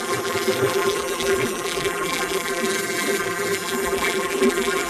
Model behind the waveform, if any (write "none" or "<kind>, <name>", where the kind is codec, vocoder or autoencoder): vocoder, BigVGAN v2